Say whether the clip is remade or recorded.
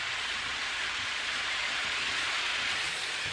remade